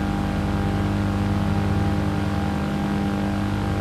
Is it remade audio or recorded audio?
recorded